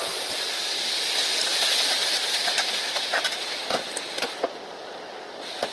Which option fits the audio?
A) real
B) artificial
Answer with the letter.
A